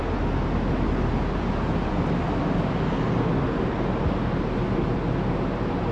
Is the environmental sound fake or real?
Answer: real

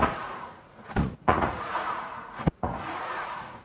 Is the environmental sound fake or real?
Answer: fake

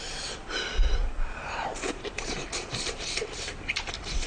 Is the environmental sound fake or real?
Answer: fake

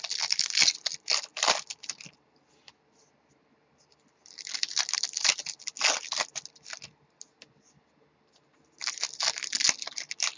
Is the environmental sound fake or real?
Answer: real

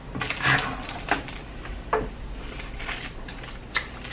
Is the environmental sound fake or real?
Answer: real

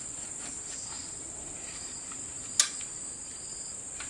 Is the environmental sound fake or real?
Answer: real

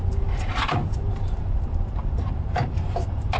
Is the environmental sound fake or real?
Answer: fake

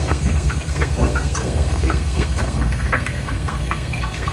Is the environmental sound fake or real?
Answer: fake